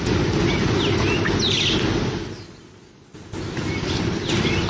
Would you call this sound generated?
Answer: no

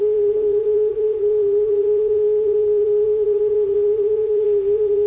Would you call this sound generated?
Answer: yes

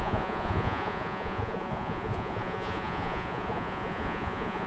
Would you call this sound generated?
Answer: yes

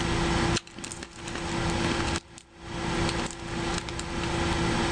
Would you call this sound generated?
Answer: no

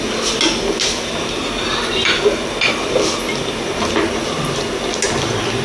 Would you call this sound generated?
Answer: no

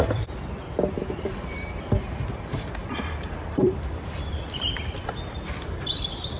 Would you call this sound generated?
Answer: yes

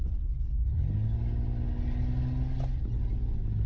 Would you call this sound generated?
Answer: no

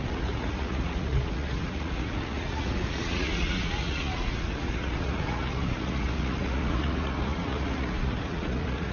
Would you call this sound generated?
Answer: yes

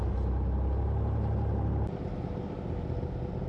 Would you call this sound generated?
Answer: no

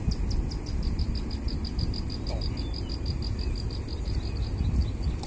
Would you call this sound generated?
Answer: no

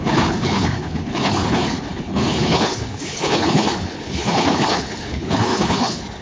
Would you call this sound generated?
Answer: yes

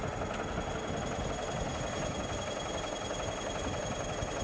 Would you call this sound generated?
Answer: no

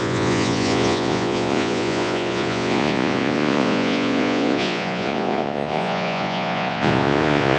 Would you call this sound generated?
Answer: yes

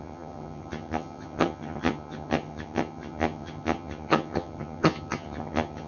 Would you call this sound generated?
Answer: yes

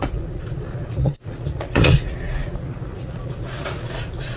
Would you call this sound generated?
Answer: yes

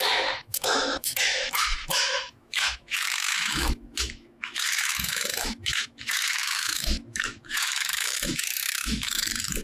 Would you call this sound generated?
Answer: yes